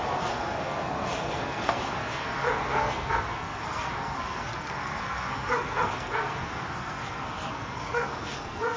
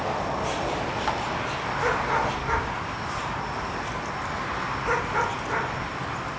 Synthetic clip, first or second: first